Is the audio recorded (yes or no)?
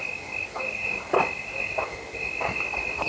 yes